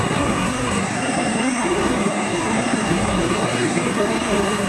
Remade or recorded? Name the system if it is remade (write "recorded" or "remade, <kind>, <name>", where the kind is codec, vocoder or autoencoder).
remade, codec, SNAC